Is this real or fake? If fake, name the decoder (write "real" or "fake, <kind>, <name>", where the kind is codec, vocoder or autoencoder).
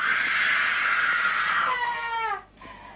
real